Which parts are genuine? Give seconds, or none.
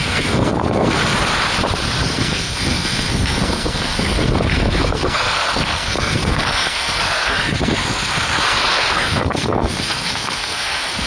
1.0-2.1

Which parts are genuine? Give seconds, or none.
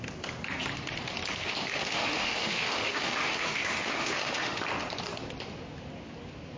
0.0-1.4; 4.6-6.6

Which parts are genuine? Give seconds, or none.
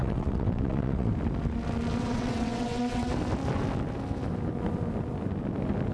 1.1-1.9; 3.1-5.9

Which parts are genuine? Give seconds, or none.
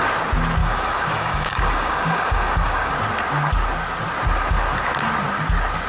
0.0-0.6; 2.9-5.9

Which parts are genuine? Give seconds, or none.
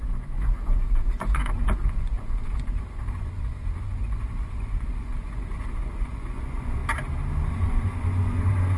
6.8-7.5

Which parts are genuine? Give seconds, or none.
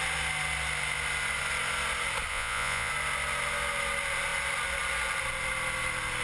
0.0-2.3; 2.9-6.2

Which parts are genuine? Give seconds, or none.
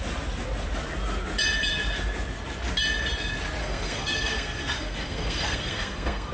0.0-3.6